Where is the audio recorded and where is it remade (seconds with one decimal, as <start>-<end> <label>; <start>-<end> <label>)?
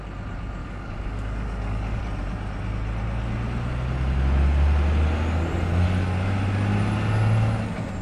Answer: 0.0-0.6 recorded; 0.6-2.0 remade; 2.0-8.0 recorded